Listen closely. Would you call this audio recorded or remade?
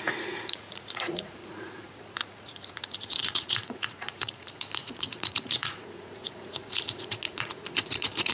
remade